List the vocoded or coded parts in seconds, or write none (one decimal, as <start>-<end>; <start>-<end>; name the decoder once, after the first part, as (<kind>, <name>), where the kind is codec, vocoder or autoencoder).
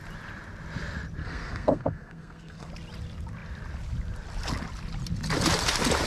1.2-2.7 (codec, SNAC)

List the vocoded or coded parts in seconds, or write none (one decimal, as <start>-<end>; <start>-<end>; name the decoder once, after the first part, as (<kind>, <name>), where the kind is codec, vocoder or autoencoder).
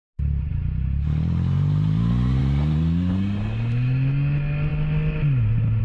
none